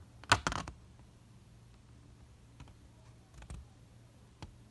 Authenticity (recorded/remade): recorded